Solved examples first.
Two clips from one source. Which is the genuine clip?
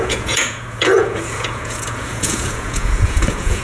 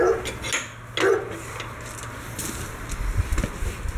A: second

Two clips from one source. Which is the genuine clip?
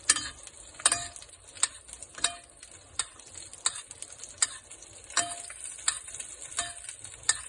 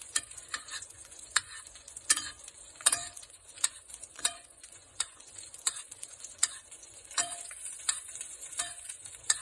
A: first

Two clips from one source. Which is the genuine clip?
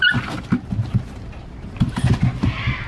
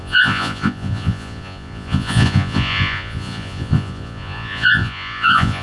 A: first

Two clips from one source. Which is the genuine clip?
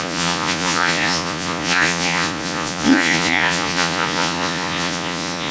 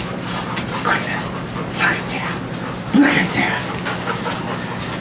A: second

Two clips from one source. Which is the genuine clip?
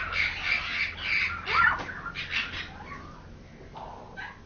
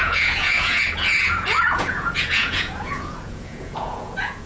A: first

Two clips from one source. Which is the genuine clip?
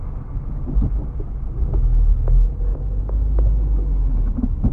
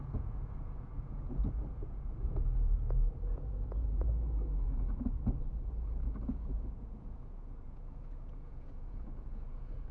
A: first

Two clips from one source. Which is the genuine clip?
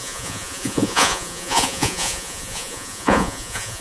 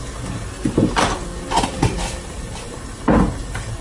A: second